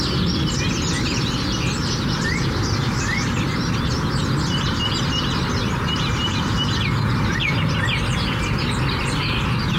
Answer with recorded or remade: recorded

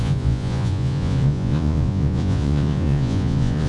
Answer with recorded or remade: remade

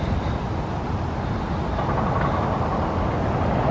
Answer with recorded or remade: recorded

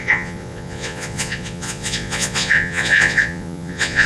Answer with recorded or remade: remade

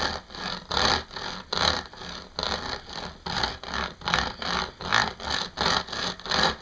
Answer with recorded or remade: recorded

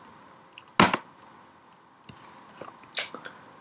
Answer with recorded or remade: recorded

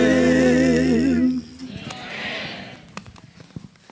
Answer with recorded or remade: recorded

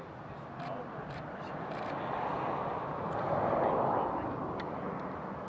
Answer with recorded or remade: recorded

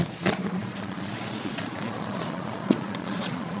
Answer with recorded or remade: remade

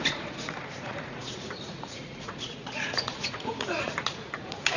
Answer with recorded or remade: remade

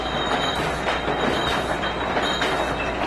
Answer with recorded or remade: recorded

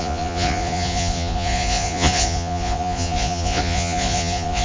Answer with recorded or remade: remade